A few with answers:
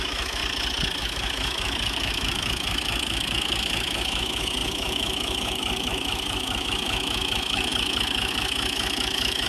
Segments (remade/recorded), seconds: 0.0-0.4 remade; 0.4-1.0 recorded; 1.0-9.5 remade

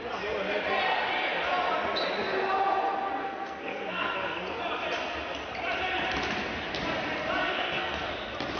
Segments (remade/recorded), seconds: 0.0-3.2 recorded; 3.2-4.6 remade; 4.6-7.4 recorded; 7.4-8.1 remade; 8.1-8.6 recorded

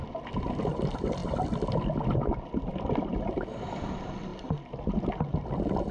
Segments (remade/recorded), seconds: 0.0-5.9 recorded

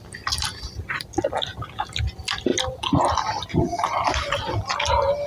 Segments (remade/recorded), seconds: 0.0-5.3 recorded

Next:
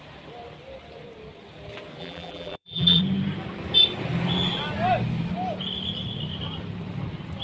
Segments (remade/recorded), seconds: 0.0-2.0 recorded; 2.0-3.0 remade; 3.0-7.4 recorded